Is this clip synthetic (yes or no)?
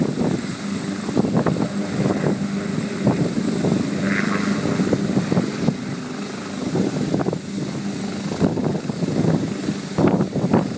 no